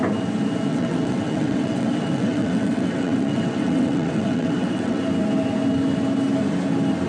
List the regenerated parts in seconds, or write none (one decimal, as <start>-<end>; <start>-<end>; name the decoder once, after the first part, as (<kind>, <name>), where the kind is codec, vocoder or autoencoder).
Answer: 0.7-5.0 (vocoder, WaveNeXt)